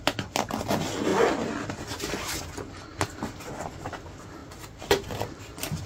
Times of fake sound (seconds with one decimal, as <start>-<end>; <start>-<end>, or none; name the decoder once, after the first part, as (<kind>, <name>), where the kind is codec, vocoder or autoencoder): none